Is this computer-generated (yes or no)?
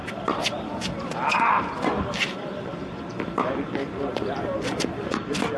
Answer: yes